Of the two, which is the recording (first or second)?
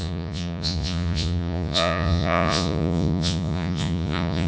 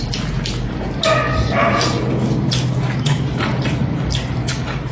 second